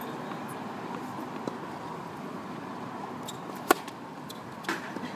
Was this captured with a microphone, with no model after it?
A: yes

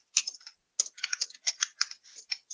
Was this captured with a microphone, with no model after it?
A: yes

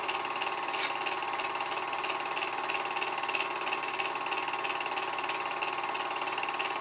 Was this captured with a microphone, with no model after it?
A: yes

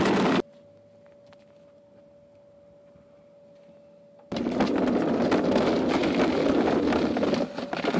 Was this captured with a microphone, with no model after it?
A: yes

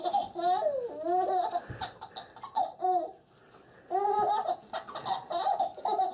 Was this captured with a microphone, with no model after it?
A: yes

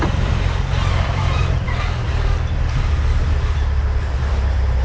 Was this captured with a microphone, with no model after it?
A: no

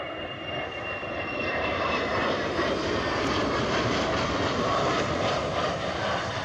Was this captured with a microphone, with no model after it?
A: no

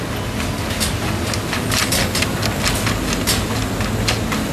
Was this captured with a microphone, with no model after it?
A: yes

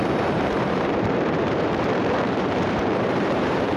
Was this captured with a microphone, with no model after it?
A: no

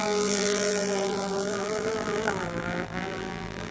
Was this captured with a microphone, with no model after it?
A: no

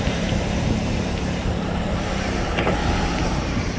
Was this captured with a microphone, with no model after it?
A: no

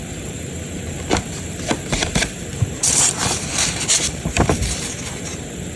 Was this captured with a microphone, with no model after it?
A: no